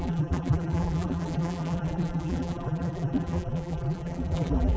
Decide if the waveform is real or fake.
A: fake